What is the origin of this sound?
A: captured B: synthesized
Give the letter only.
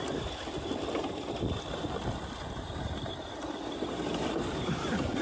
B